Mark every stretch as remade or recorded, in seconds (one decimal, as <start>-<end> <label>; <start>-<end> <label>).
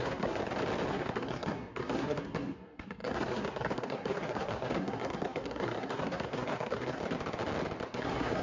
0.0-0.4 remade; 0.4-0.9 recorded; 0.9-7.0 remade; 7.0-7.9 recorded; 7.9-8.4 remade